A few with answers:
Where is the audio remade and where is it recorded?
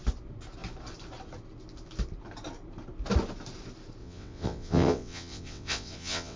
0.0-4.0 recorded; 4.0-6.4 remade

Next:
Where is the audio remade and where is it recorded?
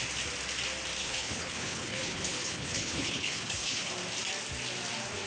0.0-1.0 recorded; 1.0-3.9 remade; 3.9-5.3 recorded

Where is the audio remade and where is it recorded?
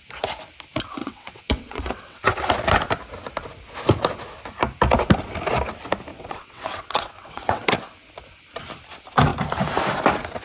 0.0-1.0 recorded; 1.0-2.3 remade; 2.3-6.1 recorded; 6.1-7.7 remade; 7.7-10.4 recorded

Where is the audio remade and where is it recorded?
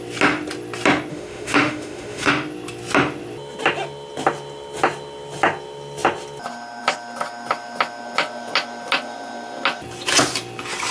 0.0-1.1 recorded; 1.1-2.3 remade; 2.3-10.9 recorded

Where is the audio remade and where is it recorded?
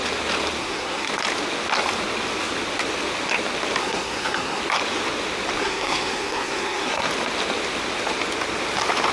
0.0-0.6 recorded; 0.6-1.1 remade; 1.1-3.8 recorded; 3.8-4.6 remade; 4.6-5.6 recorded; 5.6-7.1 remade; 7.1-9.1 recorded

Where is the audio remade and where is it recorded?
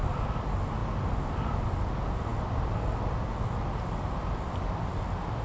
0.0-5.4 recorded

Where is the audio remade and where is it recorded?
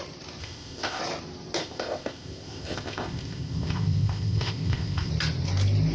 0.0-0.4 recorded; 0.4-1.0 remade; 1.0-1.6 recorded; 1.6-5.1 remade; 5.1-5.9 recorded